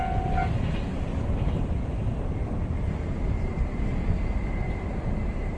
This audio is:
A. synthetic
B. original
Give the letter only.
B